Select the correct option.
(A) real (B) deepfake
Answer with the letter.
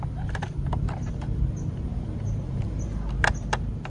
A